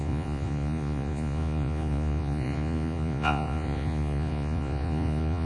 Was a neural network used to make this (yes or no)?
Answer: yes